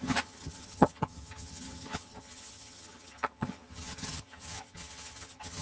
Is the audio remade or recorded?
remade